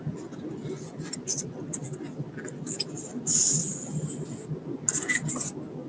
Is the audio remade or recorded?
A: recorded